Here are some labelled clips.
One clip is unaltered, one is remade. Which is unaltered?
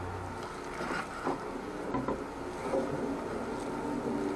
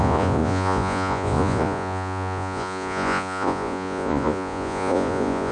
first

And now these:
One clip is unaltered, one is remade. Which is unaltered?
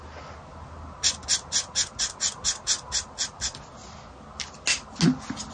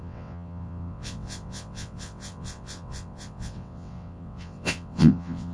first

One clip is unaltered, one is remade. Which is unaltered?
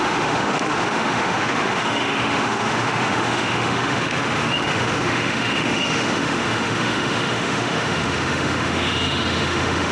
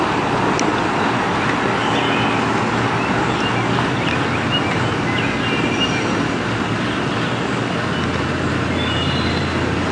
second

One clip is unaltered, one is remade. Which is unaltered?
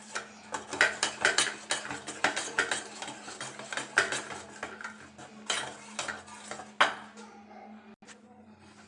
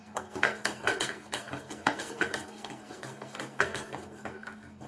first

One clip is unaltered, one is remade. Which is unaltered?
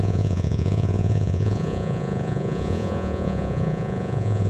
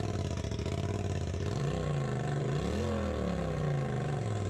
second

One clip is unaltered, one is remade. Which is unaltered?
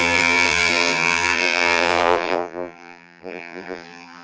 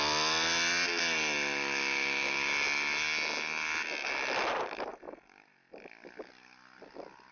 second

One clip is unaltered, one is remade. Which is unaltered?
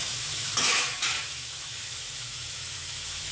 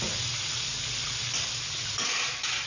second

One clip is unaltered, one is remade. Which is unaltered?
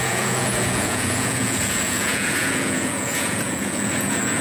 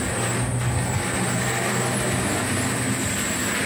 second